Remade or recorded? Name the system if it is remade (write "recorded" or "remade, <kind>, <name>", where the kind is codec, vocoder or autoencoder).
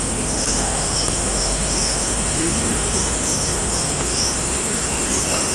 remade, autoencoder, DAC-VAE